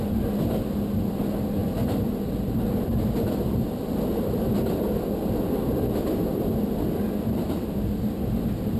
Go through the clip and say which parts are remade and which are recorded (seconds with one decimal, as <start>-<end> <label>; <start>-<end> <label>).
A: 0.0-8.8 recorded